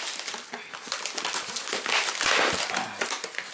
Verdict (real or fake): real